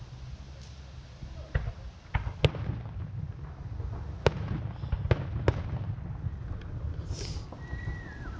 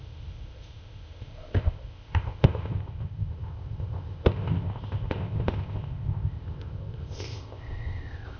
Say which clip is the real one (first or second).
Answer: first